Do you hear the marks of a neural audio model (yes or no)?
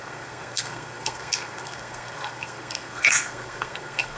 yes